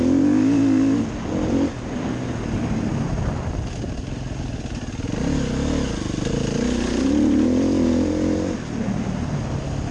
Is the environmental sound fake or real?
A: real